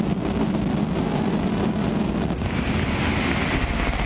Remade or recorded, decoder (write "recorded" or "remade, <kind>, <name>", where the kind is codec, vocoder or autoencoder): recorded